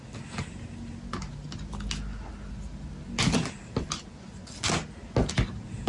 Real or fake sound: real